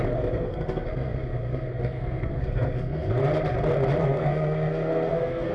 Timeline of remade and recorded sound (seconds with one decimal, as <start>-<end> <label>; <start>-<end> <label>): 0.0-3.2 remade; 3.2-4.0 recorded; 4.0-5.5 remade